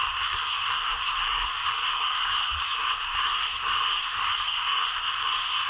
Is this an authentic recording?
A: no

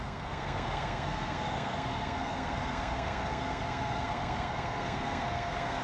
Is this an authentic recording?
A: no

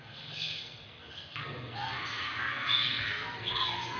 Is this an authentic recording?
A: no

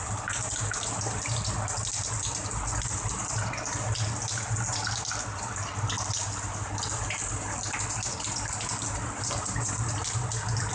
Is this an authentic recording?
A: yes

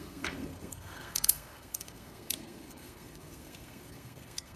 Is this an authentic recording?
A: no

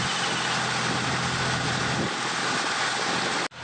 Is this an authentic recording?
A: yes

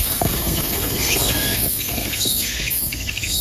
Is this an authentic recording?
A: no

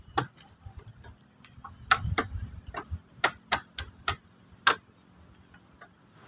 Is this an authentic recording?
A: yes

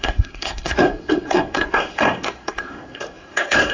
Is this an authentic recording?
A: no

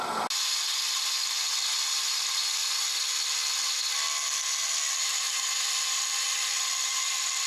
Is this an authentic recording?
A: yes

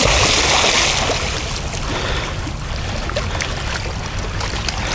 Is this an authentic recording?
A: yes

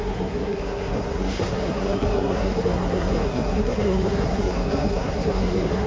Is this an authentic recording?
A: no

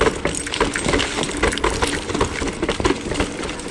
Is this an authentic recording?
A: yes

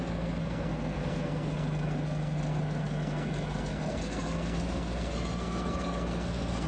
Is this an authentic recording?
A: no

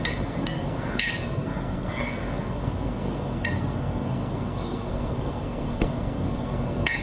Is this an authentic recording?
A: no